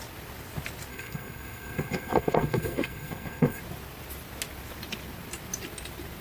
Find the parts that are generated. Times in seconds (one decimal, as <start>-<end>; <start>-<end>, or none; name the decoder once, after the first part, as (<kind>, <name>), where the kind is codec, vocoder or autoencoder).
0.9-3.6 (codec, SNAC)